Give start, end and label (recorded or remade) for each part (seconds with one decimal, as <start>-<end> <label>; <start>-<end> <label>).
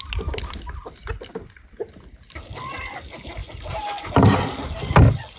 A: 0.0-5.4 recorded